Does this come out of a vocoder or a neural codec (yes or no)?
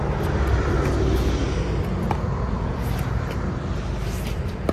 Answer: no